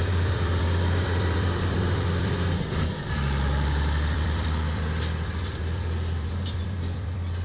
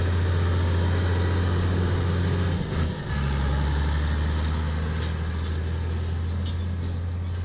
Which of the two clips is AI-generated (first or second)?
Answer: first